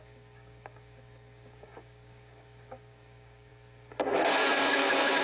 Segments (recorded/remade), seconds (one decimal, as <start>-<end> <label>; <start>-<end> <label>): 0.0-3.5 remade; 3.5-4.4 recorded; 4.4-5.2 remade